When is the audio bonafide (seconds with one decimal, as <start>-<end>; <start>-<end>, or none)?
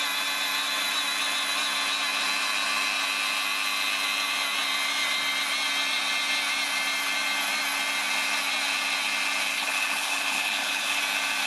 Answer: 0.0-9.5; 11.0-11.5